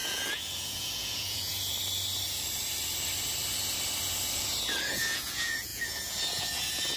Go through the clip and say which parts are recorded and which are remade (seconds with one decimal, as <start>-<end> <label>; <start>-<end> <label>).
0.0-1.5 remade; 1.5-4.9 recorded; 4.9-7.0 remade